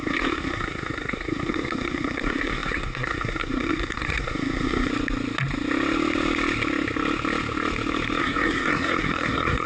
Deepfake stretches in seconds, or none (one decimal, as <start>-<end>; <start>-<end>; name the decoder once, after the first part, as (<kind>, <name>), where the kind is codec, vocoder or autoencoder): 0.0-4.9 (codec, SNAC); 8.2-9.7